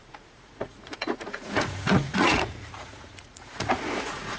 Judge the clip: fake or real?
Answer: fake